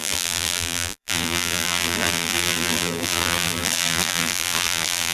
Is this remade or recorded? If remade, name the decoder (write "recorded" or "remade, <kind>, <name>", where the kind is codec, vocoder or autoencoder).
remade, vocoder, BigVGAN v2